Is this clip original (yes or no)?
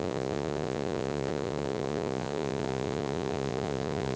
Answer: no